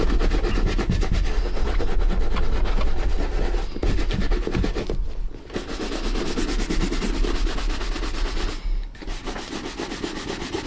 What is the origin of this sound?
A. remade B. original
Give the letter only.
B